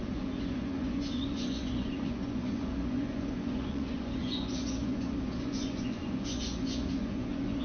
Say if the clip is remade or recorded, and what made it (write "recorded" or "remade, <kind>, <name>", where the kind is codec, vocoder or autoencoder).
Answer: remade, vocoder, Vocos